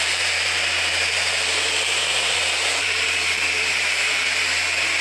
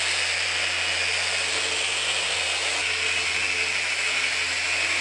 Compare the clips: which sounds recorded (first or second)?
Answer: second